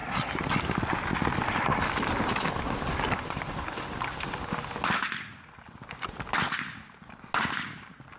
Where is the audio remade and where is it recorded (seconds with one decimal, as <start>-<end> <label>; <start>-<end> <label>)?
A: 0.0-8.2 recorded

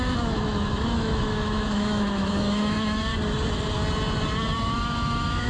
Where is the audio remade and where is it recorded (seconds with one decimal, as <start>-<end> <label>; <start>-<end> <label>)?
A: 0.0-3.1 remade; 3.1-4.5 recorded; 4.5-5.5 remade